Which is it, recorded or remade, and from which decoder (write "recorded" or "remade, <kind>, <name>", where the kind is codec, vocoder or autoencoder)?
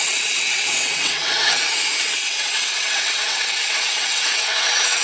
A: remade, vocoder, WaveNeXt